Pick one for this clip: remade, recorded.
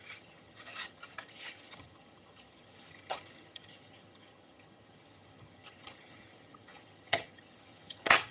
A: remade